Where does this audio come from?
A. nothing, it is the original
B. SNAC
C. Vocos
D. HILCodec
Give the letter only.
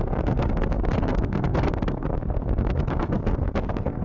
B